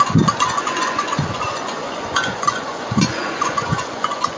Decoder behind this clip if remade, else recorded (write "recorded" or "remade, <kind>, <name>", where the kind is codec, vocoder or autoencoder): remade, vocoder, Vocos